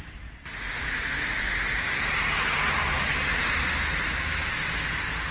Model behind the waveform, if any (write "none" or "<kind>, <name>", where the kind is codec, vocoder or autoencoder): none